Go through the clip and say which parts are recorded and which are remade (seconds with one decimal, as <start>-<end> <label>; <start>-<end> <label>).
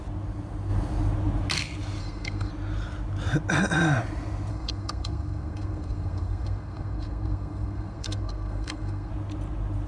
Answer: 0.0-2.0 recorded; 2.0-2.5 remade; 2.5-4.5 recorded; 4.5-9.1 remade; 9.1-9.9 recorded